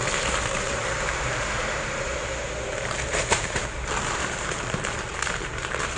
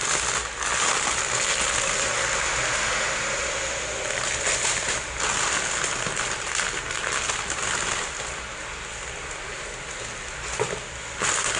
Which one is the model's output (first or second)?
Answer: first